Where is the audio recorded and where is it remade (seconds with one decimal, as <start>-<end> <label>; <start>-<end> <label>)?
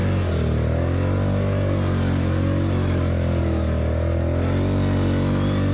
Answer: 0.0-5.7 recorded